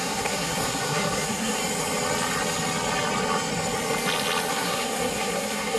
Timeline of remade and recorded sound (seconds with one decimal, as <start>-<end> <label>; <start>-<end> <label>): 0.0-1.6 remade; 1.6-4.5 recorded; 4.5-5.8 remade

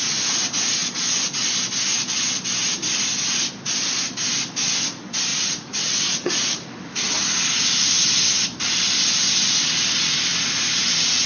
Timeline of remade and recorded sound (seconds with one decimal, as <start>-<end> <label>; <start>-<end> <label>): 0.0-5.3 recorded; 5.3-6.7 remade; 6.7-10.3 recorded; 10.3-10.8 remade; 10.8-11.3 recorded

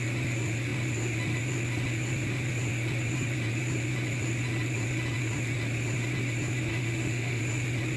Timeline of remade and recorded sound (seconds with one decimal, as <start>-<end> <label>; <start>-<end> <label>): 0.0-6.7 recorded; 6.7-7.4 remade; 7.4-8.0 recorded

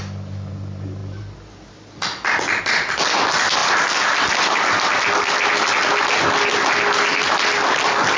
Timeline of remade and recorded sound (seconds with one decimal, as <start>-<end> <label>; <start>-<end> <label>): 0.0-3.6 recorded; 3.6-5.7 remade; 5.7-7.1 recorded; 7.1-8.2 remade

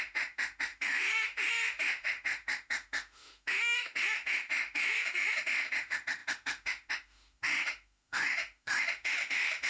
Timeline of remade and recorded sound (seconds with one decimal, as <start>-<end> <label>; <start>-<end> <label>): 0.0-9.7 remade

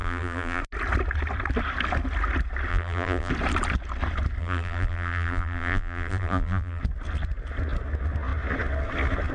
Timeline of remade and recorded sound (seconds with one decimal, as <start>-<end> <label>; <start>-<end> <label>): 0.0-0.6 remade; 0.6-2.7 recorded; 2.7-3.3 remade; 3.3-4.4 recorded; 4.4-6.8 remade; 6.8-9.3 recorded